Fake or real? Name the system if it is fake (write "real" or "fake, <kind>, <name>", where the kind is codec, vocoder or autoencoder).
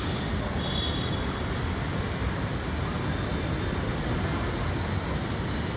real